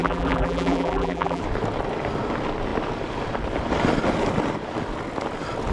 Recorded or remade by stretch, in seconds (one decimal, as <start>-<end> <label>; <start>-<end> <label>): 0.0-1.4 remade; 1.4-5.7 recorded